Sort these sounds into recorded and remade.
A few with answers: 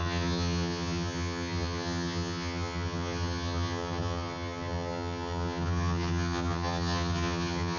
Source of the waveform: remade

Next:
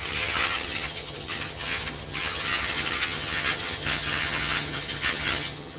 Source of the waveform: remade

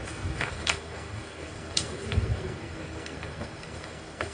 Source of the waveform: remade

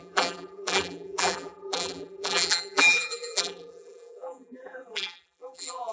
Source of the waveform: remade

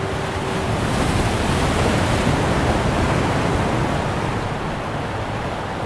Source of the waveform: recorded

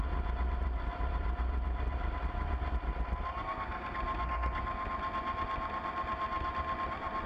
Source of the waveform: recorded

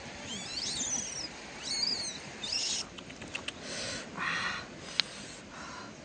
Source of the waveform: recorded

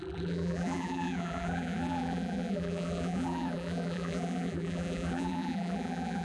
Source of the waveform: remade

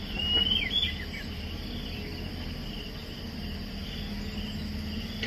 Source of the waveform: recorded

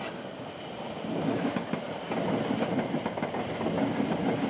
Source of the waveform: recorded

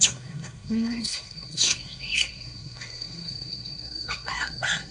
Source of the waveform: remade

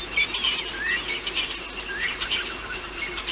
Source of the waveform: recorded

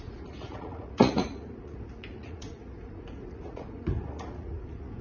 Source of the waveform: remade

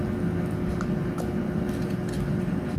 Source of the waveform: recorded